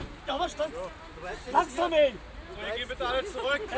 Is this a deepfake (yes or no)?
no